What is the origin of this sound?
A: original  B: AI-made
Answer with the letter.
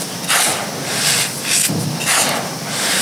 A